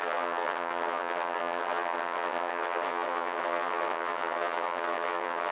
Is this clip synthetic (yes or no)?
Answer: yes